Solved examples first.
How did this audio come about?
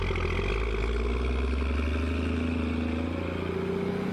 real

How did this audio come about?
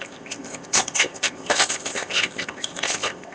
fake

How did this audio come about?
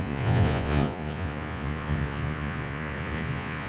fake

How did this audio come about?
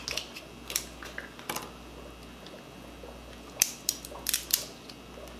real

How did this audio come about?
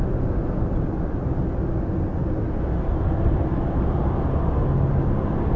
real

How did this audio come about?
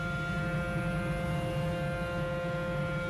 real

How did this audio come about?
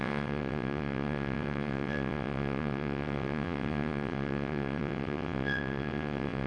fake